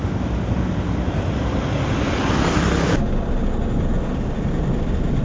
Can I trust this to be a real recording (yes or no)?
yes